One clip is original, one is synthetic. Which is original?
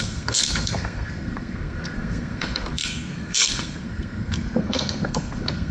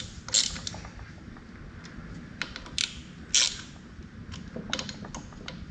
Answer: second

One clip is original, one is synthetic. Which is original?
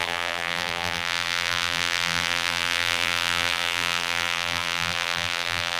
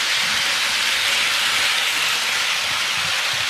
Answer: second